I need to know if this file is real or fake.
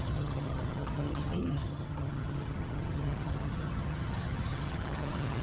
fake